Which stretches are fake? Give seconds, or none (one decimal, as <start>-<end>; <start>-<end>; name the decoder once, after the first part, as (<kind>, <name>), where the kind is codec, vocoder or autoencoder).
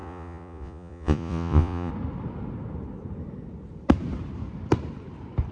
0.0-1.9 (vocoder, Vocos)